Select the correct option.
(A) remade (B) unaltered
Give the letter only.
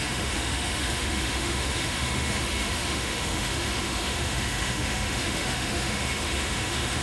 A